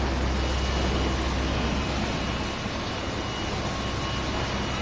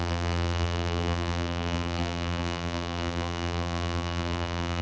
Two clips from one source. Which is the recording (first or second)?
first